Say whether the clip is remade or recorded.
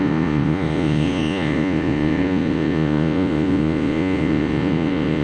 remade